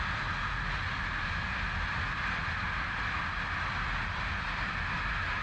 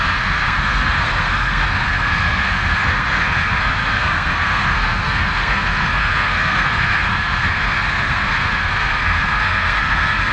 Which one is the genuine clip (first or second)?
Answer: first